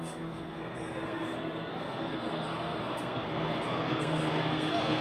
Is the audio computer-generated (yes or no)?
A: yes